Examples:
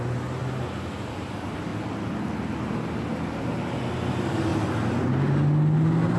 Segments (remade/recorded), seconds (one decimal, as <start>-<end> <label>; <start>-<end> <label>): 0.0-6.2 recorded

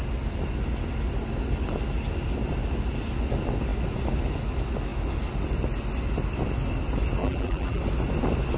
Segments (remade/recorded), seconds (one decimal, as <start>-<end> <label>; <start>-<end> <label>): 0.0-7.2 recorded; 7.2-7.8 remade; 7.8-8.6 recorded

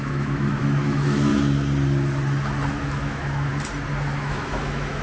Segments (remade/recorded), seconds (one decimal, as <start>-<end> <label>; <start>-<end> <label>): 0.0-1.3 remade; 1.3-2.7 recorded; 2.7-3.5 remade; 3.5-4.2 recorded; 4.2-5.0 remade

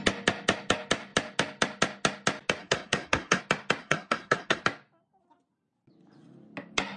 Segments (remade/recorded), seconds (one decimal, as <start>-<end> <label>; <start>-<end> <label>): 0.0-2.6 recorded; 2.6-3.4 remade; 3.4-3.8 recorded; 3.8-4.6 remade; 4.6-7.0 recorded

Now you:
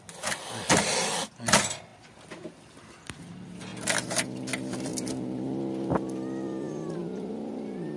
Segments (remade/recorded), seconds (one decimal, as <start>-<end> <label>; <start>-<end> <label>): 0.0-7.0 recorded; 7.0-7.5 remade; 7.5-8.0 recorded

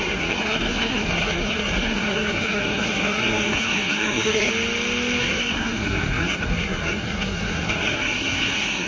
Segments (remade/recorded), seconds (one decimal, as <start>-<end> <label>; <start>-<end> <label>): 0.0-4.5 remade; 4.5-5.2 recorded; 5.2-8.9 remade

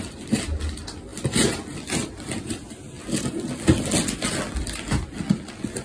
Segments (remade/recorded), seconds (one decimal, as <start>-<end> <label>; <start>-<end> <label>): 0.0-5.8 recorded

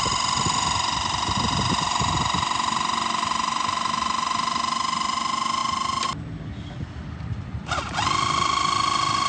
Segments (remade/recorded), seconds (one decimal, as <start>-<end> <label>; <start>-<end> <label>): 0.0-9.3 recorded